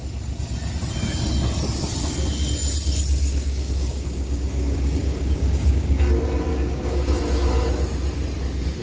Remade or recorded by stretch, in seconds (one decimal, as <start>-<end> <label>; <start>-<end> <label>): 0.0-3.3 recorded; 3.3-6.1 remade; 6.1-6.5 recorded; 6.5-7.2 remade; 7.2-8.8 recorded